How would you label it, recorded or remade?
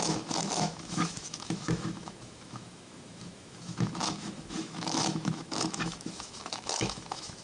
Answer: remade